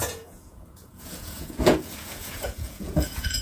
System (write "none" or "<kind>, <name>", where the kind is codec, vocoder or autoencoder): vocoder, Vocos